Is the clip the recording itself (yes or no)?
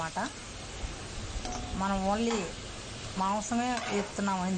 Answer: yes